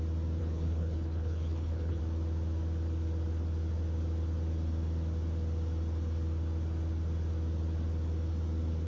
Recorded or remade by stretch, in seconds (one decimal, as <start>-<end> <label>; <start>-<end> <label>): 0.0-0.4 recorded; 0.4-2.0 remade; 2.0-8.9 recorded